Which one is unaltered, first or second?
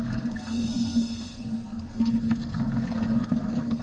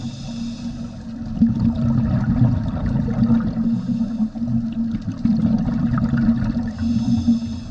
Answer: second